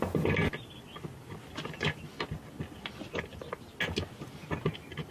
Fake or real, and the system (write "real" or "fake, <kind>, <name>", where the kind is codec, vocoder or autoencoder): real